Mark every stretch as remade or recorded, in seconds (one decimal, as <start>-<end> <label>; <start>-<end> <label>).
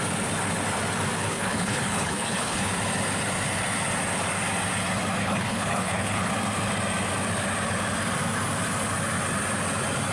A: 0.0-1.2 recorded; 1.2-2.7 remade; 2.7-5.2 recorded; 5.2-6.3 remade; 6.3-10.1 recorded